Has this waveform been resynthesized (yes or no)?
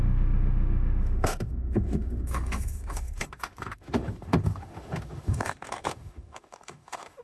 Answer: yes